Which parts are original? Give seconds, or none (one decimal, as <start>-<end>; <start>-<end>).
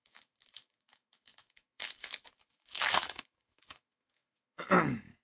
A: none